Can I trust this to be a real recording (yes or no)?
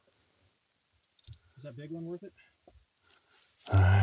yes